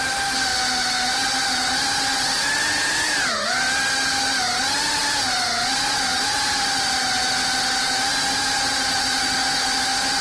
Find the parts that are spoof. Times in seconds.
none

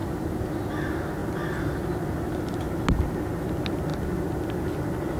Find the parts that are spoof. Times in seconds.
none

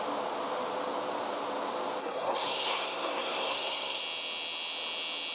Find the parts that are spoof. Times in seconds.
2.0-4.0 (codec, SNAC)

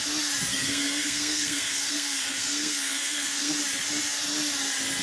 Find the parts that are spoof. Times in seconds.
0.5-3.5 (codec, SNAC)

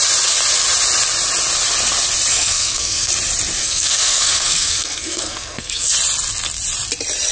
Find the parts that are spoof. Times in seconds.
2.3-3.1 (codec, SNAC); 3.6-5.9

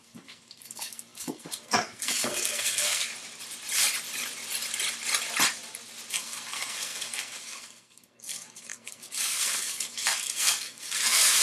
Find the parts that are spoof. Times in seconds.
0.0-3.1 (codec, SNAC); 6.1-11.4

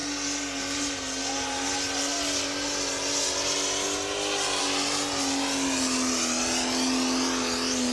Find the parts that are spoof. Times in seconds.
none